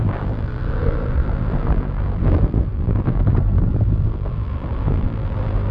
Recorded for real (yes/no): no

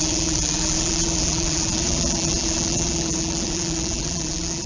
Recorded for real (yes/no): no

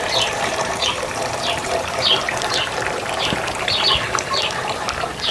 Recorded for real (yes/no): no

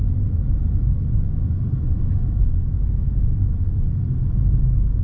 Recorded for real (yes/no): yes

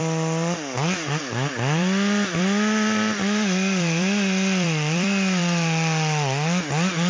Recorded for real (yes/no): no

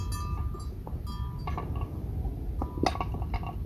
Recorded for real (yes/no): yes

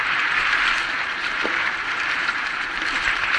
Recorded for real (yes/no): no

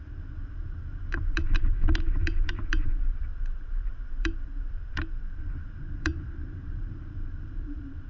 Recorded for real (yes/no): no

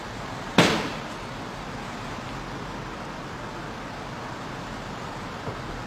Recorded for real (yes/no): yes